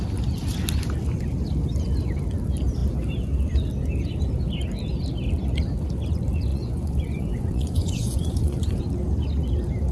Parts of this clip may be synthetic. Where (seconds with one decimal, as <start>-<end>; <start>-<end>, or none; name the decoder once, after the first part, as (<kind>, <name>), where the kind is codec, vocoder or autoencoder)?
6.5-8.8 (vocoder, Vocos)